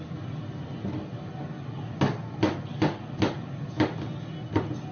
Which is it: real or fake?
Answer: real